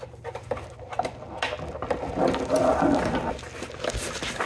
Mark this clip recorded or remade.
recorded